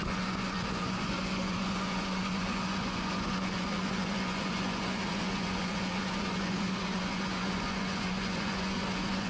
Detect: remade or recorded remade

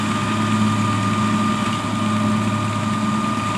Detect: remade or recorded recorded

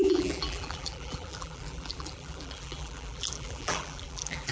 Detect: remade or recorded remade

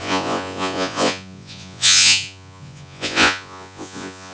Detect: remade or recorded remade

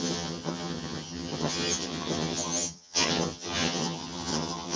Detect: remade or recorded remade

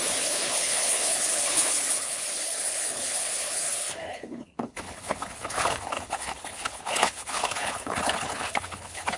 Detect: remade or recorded remade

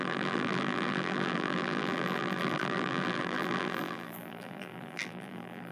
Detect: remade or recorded remade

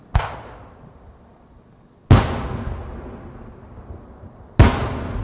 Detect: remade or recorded recorded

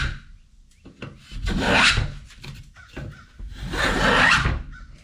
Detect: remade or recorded recorded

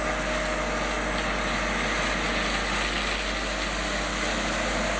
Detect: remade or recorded recorded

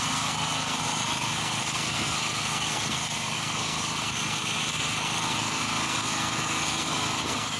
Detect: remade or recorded remade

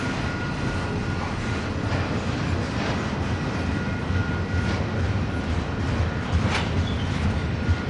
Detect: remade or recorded recorded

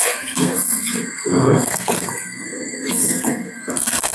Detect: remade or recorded remade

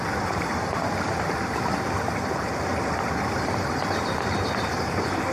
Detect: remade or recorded recorded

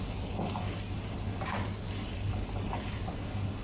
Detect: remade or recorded recorded